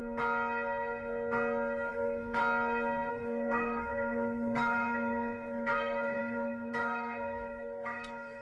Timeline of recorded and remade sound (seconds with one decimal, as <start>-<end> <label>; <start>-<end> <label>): 0.0-1.9 recorded; 1.9-2.4 remade; 2.4-3.1 recorded; 3.1-8.4 remade